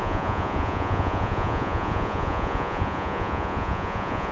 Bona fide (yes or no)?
no